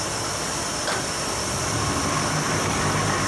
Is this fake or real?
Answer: real